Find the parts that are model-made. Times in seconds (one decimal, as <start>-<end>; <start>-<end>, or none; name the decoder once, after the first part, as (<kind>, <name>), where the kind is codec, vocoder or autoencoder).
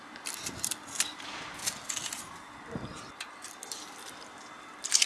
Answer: none